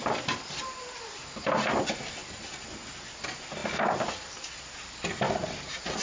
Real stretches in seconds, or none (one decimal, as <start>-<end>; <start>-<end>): 0.0-6.0